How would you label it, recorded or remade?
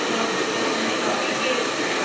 recorded